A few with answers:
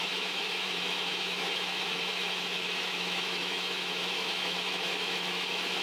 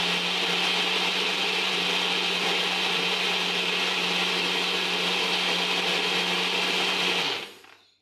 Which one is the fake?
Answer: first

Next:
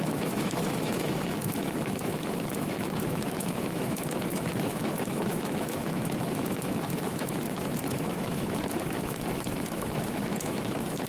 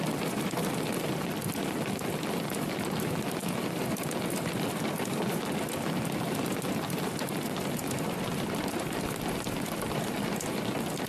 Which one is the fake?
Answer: first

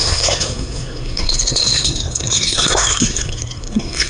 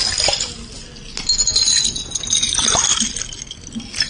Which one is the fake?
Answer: first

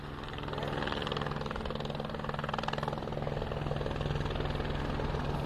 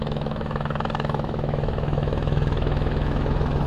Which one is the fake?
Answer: second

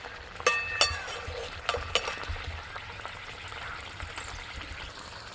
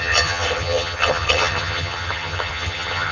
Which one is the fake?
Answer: second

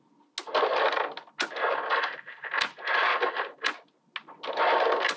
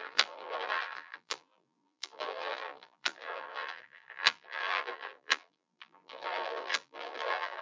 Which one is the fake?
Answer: second